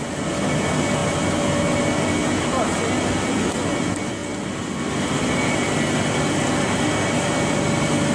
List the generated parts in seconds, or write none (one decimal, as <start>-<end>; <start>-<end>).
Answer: 4.2-4.8